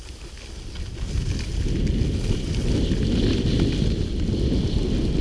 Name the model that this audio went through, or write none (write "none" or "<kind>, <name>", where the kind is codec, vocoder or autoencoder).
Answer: none